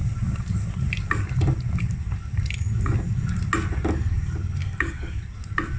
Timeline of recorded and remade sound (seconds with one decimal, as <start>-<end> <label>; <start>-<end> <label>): 0.0-4.6 recorded; 4.6-5.2 remade; 5.2-5.8 recorded